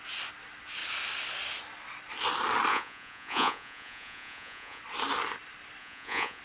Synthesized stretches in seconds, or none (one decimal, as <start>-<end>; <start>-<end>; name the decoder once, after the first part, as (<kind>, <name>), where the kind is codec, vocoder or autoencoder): 2.7-4.8 (vocoder, Vocos); 5.8-6.4